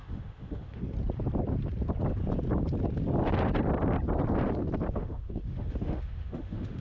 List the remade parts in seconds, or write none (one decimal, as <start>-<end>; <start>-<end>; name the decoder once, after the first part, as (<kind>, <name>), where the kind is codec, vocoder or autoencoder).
0.0-0.8 (autoencoder, DAC-VAE); 4.9-6.8